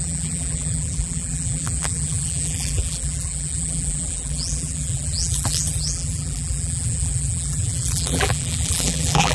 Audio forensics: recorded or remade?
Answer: remade